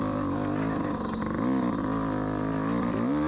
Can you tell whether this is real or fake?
real